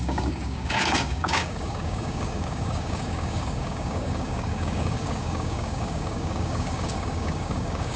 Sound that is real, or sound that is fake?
fake